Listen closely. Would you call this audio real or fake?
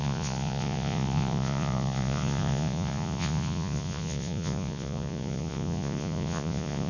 fake